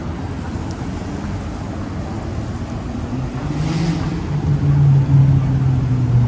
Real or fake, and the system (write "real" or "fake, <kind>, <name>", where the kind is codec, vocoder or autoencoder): real